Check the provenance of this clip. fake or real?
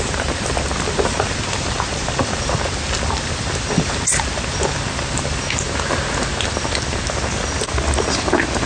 real